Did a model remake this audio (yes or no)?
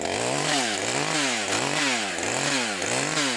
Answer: no